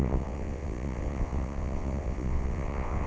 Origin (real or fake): fake